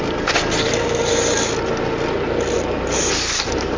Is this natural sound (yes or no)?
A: yes